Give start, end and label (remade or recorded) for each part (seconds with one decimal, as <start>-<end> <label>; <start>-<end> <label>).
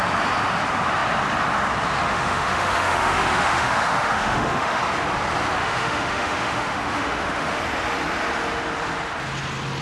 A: 0.0-2.0 recorded; 2.0-4.8 remade; 4.8-5.6 recorded; 5.6-7.6 remade; 7.6-9.8 recorded